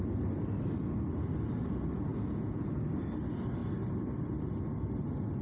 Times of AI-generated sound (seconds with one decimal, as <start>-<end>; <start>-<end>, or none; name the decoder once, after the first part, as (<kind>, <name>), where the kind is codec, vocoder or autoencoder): 2.1-2.7 (vocoder, Vocos)